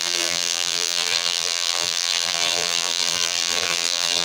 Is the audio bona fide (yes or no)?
no